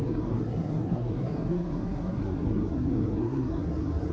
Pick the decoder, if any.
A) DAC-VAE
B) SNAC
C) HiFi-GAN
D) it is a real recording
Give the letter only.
B